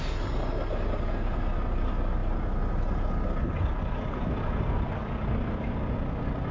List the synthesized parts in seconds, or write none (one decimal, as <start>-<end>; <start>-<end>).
none

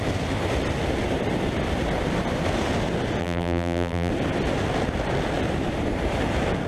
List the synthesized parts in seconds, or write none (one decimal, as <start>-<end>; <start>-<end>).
3.2-4.1

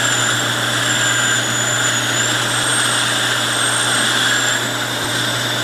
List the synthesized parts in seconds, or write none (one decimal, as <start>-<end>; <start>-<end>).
none

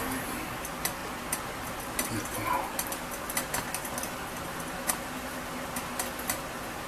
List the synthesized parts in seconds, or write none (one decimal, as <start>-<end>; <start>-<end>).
none

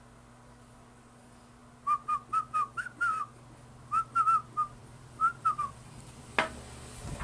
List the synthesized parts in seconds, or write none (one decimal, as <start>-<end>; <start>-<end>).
4.8-6.3

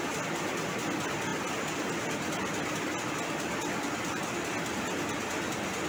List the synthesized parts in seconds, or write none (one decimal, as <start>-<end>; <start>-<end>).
none